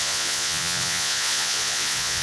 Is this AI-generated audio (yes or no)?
yes